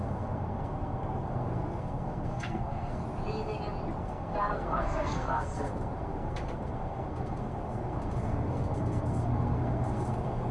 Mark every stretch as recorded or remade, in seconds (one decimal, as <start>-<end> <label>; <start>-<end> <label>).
0.0-3.0 remade; 3.0-4.0 recorded; 4.0-10.5 remade